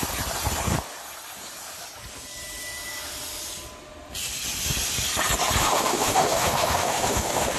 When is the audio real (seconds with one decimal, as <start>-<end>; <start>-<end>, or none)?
0.0-5.6